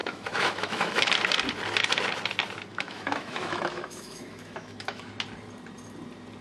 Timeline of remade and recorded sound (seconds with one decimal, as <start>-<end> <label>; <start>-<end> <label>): 0.0-1.1 remade; 1.1-2.7 recorded; 2.7-5.1 remade; 5.1-6.4 recorded